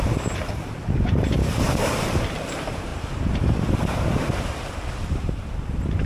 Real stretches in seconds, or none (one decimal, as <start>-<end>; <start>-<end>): none